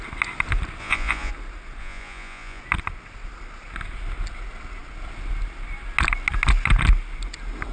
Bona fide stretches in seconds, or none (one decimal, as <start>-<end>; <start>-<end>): 0.0-0.8; 1.3-1.8; 2.6-7.7